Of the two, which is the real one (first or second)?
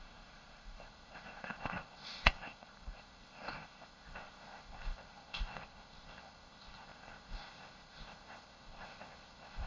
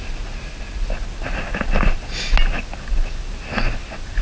second